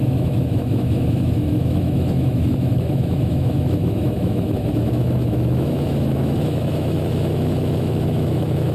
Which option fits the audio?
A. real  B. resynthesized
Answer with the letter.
B